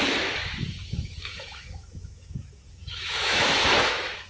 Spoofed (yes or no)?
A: yes